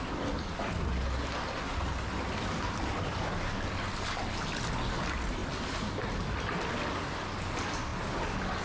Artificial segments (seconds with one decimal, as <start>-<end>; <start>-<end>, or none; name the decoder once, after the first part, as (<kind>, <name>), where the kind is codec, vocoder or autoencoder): none